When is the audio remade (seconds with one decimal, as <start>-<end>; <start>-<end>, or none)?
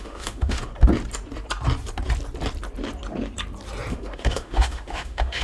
0.0-0.7; 3.9-5.4